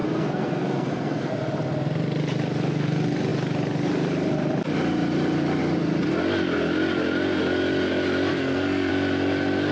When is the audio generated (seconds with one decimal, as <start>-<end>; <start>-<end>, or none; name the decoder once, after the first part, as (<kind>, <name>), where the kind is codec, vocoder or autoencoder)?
0.0-1.3 (codec, SNAC); 8.3-8.9